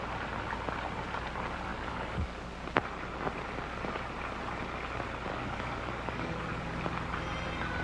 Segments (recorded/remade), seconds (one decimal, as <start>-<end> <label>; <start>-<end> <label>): 0.0-1.7 recorded; 1.7-2.5 remade; 2.5-5.3 recorded; 5.3-6.5 remade; 6.5-7.8 recorded